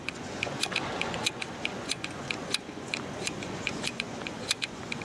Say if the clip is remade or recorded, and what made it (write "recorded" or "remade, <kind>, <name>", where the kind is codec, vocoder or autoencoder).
remade, vocoder, Vocos